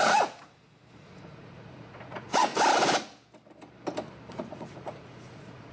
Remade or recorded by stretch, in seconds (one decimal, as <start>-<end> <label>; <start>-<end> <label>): 0.0-2.5 remade; 2.5-4.3 recorded; 4.3-5.7 remade